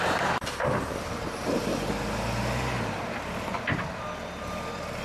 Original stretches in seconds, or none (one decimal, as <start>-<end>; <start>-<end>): 1.7-5.0